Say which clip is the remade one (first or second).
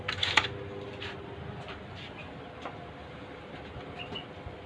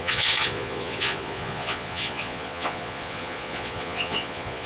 second